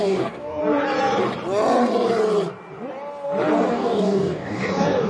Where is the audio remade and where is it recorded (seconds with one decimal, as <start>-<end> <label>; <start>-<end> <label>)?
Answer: 0.0-0.6 remade; 0.6-3.7 recorded; 3.7-5.1 remade